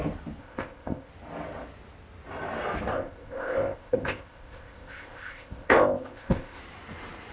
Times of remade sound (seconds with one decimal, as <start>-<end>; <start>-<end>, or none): 0.4-1.1; 2.9-6.6